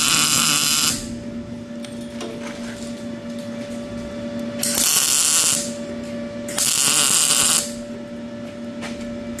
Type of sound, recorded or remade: recorded